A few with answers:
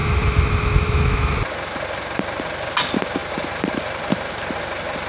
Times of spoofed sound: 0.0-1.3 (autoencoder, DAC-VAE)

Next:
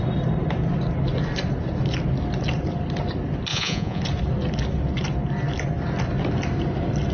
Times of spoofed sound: 3.5-4.0 (vocoder, Vocos)

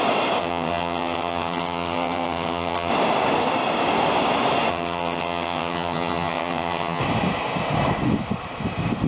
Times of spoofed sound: 0.4-2.9 (vocoder, HiFi-GAN); 4.7-7.0

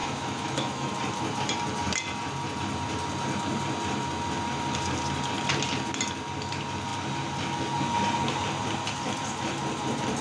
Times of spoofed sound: 0.0-0.9 (autoencoder, DAC-VAE)

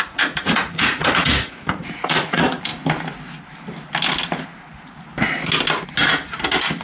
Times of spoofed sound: 0.0-2.7 (vocoder, Vocos)

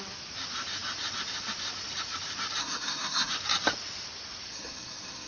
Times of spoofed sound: 2.6-3.3 (codec, SNAC); 4.5-5.3

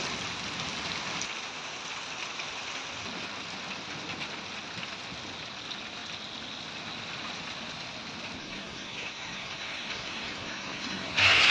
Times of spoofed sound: 8.4-11.5 (codec, SNAC)

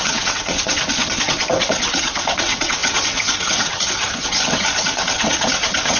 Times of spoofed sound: 0.0-6.0 (vocoder, WaveNeXt)